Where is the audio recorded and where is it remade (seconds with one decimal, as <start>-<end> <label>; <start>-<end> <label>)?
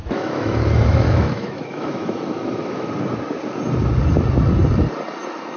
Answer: 0.0-2.9 remade; 2.9-5.6 recorded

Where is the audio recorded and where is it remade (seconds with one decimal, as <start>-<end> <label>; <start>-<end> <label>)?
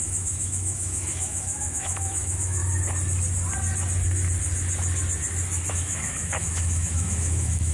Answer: 0.0-2.6 remade; 2.6-5.7 recorded; 5.7-7.7 remade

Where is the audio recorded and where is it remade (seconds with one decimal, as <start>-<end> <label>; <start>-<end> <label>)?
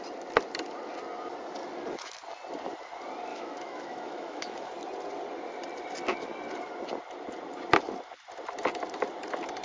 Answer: 0.0-3.3 recorded; 3.3-4.7 remade; 4.7-9.6 recorded